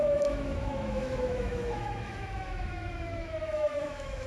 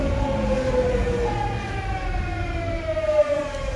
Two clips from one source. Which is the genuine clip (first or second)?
second